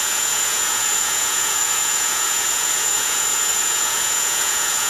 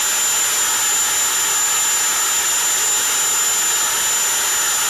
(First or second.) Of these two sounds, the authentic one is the second